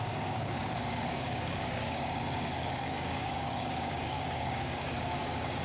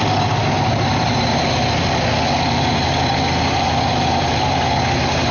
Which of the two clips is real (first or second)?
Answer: second